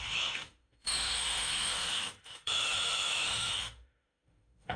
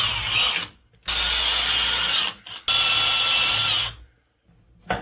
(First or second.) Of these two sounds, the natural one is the second